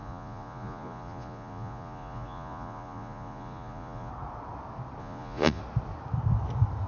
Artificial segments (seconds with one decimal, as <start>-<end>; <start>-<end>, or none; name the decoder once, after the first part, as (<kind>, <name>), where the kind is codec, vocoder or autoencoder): 0.0-4.1 (vocoder, Vocos); 5.0-5.6